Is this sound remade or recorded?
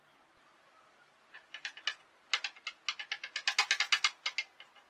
recorded